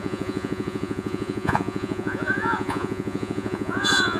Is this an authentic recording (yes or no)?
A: no